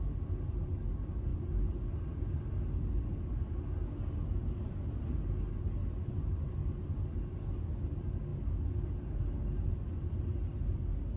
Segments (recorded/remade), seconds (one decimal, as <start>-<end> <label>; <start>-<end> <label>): 0.0-11.2 recorded

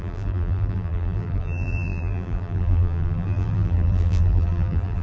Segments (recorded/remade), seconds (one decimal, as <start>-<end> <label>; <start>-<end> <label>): 0.0-5.0 remade

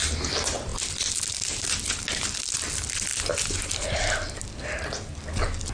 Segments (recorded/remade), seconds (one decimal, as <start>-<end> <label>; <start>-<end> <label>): 0.0-0.7 recorded; 0.7-2.0 remade; 2.0-3.1 recorded; 3.1-4.4 remade; 4.4-5.7 recorded

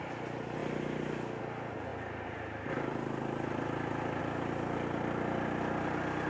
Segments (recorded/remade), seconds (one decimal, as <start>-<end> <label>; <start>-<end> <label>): 0.0-1.9 recorded; 1.9-4.2 remade; 4.2-6.3 recorded

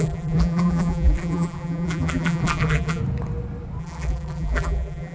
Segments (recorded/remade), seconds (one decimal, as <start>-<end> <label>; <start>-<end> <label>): 0.0-3.0 remade; 3.0-3.8 recorded; 3.8-5.1 remade